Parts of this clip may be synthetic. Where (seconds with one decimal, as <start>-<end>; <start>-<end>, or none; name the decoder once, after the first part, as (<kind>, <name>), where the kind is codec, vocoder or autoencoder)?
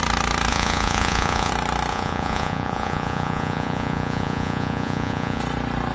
0.5-1.5 (vocoder, Vocos); 1.9-5.4